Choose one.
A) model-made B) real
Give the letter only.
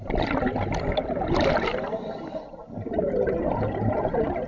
B